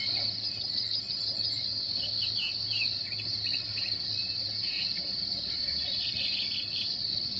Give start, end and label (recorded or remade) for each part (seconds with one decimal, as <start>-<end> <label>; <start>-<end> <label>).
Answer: 0.0-4.2 recorded; 4.2-6.0 remade; 6.0-7.4 recorded